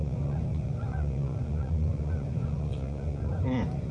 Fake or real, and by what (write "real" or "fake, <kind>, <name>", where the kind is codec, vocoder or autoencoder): fake, vocoder, Vocos